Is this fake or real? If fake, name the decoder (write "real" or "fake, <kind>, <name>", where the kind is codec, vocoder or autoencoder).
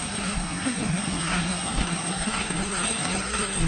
fake, codec, SNAC